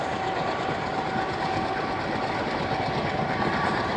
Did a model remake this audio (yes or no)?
no